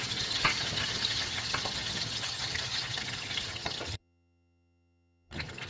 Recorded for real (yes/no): no